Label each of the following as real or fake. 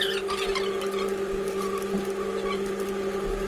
real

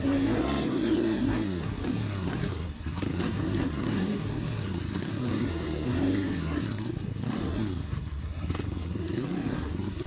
fake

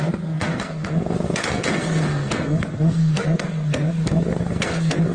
fake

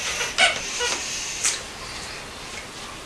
real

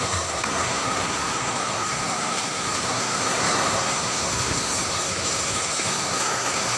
fake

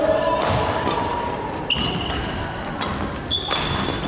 real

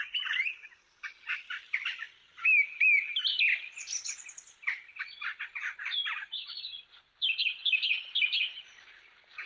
real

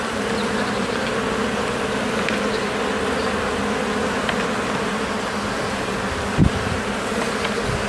real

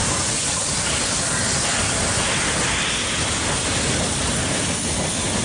real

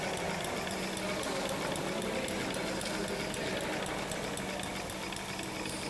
real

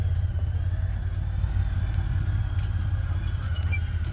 real